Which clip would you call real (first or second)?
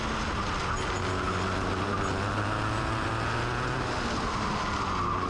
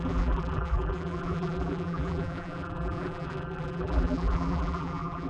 first